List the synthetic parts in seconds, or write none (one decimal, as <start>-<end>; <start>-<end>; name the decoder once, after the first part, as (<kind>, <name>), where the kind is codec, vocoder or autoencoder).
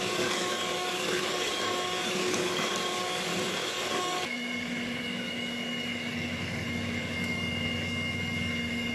0.0-3.3 (codec, DAC); 3.9-8.9